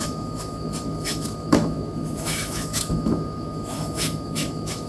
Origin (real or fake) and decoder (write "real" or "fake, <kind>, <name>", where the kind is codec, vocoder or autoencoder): fake, autoencoder, DAC-VAE